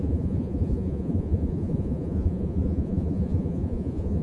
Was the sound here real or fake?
fake